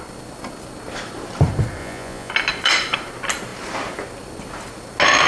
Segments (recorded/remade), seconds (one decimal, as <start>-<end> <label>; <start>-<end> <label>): 0.0-1.8 recorded; 1.8-2.3 remade; 2.3-5.3 recorded